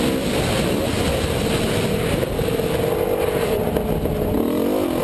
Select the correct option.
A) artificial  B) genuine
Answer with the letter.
B